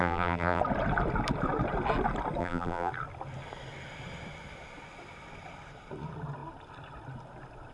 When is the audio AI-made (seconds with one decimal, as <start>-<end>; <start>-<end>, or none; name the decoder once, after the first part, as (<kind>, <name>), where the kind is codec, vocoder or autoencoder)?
0.0-0.6 (vocoder, BigVGAN v2); 2.4-2.9